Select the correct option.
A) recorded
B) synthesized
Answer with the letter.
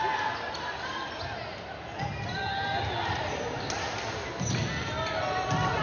A